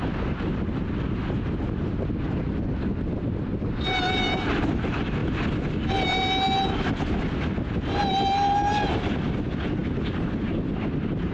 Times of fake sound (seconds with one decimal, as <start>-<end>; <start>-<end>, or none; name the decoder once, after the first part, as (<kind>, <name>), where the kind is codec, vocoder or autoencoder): none